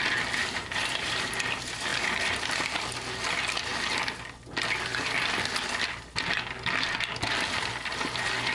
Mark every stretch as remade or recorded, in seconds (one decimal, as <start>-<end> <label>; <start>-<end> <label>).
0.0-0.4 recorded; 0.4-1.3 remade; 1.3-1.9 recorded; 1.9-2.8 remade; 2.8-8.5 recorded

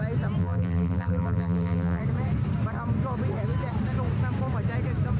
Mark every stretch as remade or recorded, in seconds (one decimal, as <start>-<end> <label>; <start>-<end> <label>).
0.0-0.4 recorded; 0.4-2.0 remade; 2.0-5.2 recorded

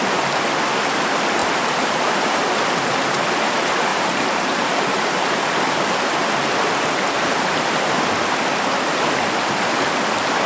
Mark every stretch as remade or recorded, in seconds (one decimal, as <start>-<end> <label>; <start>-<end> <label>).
0.0-1.4 recorded; 1.4-2.4 remade; 2.4-3.9 recorded; 3.9-5.2 remade; 5.2-10.5 recorded